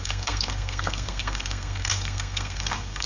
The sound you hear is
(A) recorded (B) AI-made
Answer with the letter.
B